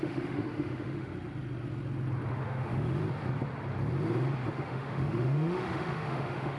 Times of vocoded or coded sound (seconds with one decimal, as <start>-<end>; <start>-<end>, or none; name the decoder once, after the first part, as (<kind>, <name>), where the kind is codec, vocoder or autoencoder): 0.0-1.1 (autoencoder, DAC-VAE); 2.3-3.0; 4.5-6.6